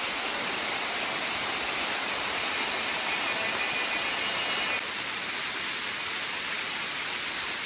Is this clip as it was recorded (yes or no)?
yes